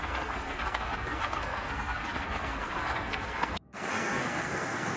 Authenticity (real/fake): fake